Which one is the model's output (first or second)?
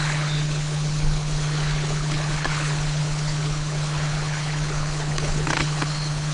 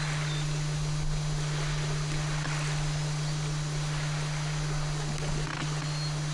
first